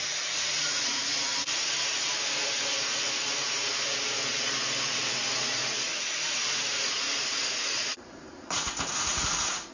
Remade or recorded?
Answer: remade